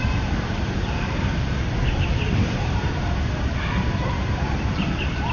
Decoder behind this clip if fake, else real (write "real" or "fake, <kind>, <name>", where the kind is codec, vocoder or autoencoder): fake, vocoder, BigVGAN v2